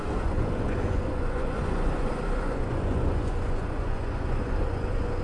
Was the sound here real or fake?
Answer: fake